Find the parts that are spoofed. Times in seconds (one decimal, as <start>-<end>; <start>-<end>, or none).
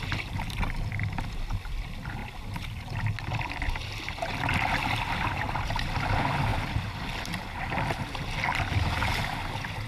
none